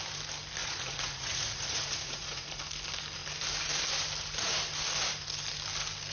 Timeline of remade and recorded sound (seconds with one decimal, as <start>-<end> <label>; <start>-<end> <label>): 0.0-0.6 recorded; 0.6-2.6 remade; 2.6-6.1 recorded